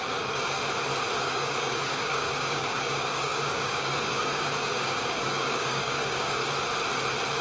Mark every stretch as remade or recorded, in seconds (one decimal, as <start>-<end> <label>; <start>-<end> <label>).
0.0-0.6 remade; 0.6-1.2 recorded; 1.2-6.4 remade; 6.4-7.4 recorded